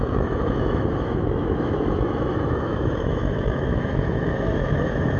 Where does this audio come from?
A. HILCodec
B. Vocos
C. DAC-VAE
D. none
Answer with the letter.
C